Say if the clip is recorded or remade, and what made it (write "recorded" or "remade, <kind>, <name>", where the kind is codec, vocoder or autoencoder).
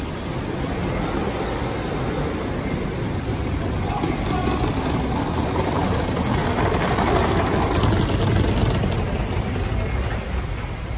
recorded